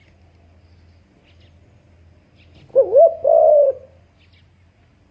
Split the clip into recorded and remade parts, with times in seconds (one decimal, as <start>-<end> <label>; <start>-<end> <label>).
0.0-2.7 recorded; 2.7-3.7 remade; 3.7-5.1 recorded

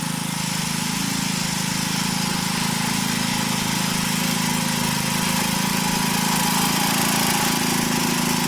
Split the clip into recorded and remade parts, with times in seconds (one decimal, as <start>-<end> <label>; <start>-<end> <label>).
0.0-8.5 recorded